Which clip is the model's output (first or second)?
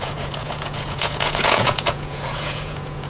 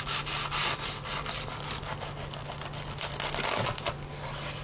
first